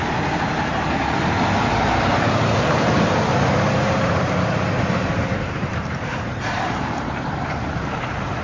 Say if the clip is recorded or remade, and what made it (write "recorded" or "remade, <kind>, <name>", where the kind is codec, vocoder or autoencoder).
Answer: remade, vocoder, BigVGAN v2